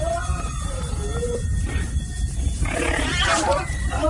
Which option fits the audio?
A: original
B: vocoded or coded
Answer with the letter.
A